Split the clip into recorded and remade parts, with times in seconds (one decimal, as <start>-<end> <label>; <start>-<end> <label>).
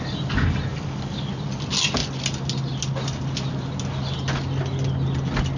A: 0.0-0.7 recorded; 0.7-1.3 remade; 1.3-5.6 recorded